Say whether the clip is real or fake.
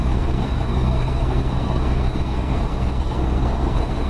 fake